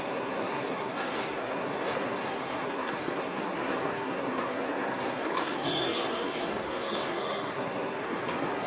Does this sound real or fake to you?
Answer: fake